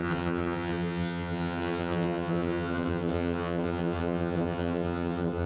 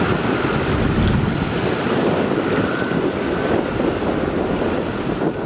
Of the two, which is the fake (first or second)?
first